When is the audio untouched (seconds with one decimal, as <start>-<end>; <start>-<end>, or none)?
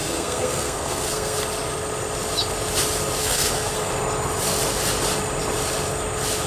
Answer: 1.4-3.2; 3.9-6.5